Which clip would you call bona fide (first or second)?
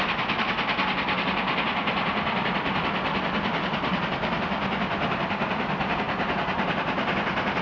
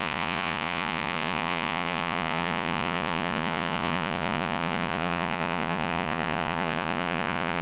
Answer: first